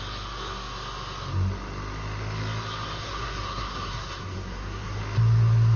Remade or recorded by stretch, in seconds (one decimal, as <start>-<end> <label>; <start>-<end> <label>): 0.0-3.0 recorded; 3.0-5.0 remade; 5.0-5.8 recorded